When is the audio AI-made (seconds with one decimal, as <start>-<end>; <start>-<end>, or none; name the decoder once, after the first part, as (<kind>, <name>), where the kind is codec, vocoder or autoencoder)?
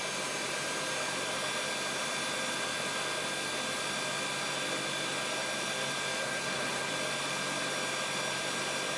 6.2-6.9 (codec, SNAC)